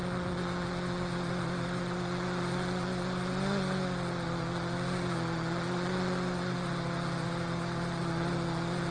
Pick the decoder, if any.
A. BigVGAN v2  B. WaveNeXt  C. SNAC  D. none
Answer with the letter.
D